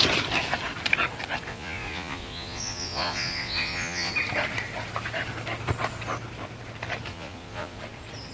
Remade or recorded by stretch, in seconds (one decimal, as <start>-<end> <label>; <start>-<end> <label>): 0.0-1.5 recorded; 1.5-4.1 remade; 4.1-7.1 recorded; 7.1-7.8 remade; 7.8-8.3 recorded